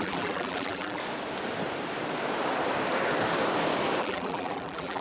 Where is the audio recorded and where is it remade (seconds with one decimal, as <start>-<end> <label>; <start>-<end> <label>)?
0.0-1.0 remade; 1.0-4.0 recorded; 4.0-5.0 remade